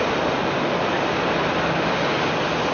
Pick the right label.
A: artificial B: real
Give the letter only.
B